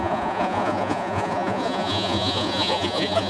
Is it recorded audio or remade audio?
remade